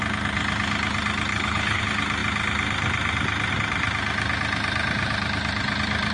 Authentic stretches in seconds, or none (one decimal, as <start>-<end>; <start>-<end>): 0.0-1.3; 1.8-6.1